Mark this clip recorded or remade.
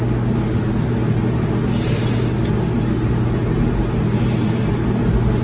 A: recorded